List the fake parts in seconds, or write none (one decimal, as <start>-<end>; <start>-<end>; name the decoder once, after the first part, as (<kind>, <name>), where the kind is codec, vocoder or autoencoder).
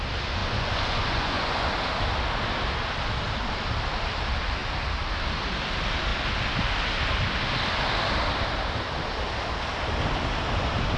0.4-1.7 (vocoder, Vocos)